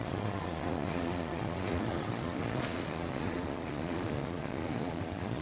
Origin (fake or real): fake